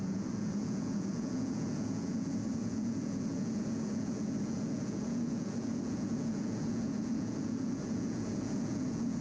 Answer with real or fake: fake